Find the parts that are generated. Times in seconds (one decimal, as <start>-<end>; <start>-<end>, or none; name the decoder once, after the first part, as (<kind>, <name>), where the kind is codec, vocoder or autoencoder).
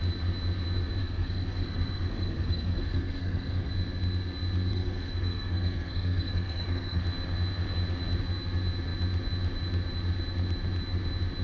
1.0-3.7 (codec, SNAC); 4.7-7.0